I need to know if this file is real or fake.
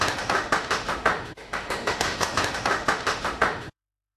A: fake